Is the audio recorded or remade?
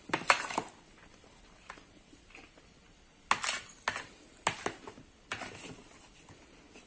recorded